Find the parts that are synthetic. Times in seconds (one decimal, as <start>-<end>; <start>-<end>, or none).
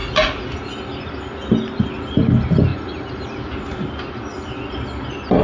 none